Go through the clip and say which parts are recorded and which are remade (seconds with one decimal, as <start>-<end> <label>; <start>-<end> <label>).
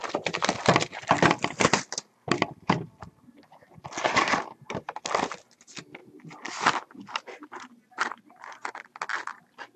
0.0-6.0 recorded; 6.0-7.2 remade; 7.2-9.8 recorded